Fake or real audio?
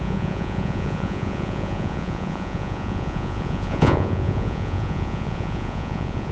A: fake